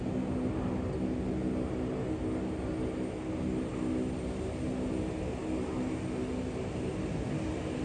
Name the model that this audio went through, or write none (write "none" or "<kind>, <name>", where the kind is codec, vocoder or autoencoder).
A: none